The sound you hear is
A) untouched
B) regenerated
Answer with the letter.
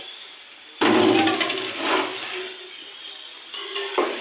B